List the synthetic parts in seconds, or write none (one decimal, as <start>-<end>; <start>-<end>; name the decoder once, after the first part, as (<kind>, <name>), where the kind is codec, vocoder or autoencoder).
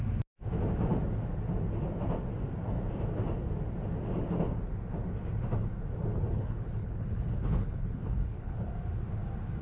6.1-8.7 (codec, HILCodec)